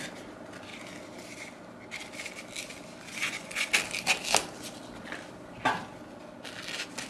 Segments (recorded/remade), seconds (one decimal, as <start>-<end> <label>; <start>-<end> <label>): 0.0-3.1 recorded; 3.1-3.7 remade; 3.7-7.1 recorded